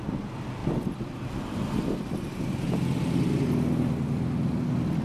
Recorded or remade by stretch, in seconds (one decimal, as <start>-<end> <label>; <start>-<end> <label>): 0.0-5.0 recorded